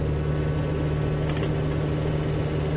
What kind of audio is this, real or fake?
real